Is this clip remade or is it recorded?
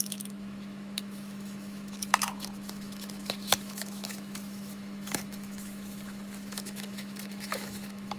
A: remade